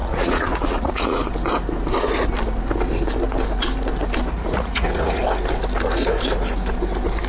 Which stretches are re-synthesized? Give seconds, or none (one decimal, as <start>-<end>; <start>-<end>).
0.0-1.2; 4.3-5.2